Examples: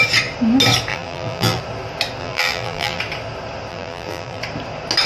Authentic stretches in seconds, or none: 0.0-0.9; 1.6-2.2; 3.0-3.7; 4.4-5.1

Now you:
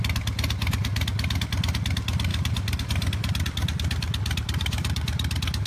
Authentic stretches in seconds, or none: 0.0-2.3

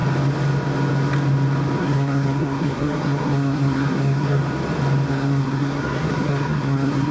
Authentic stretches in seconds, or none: 0.0-1.8; 4.4-5.1